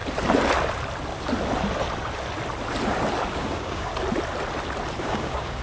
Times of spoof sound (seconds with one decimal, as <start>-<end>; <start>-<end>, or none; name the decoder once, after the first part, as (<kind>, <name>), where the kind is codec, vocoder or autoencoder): 3.3-3.9 (codec, DAC); 5.0-5.6